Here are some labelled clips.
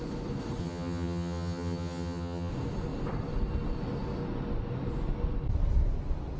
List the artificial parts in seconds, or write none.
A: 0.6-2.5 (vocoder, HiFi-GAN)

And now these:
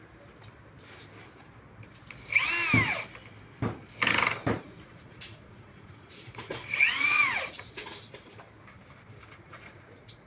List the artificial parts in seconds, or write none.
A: 4.6-7.8 (vocoder, Vocos); 9.4-10.3

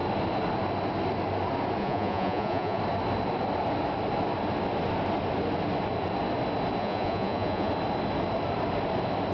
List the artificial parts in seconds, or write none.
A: 1.8-2.8 (vocoder, Vocos); 6.8-7.7

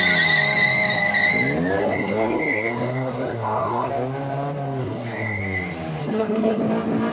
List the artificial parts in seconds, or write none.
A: 1.8-3.9 (codec, SNAC); 4.8-5.4; 6.0-6.6

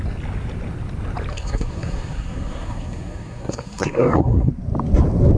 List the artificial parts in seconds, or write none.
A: 1.3-4.5 (codec, SNAC)